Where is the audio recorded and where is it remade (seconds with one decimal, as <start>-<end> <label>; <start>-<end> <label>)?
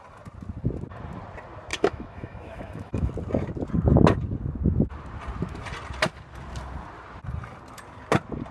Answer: 0.0-1.7 recorded; 1.7-3.1 remade; 3.1-8.5 recorded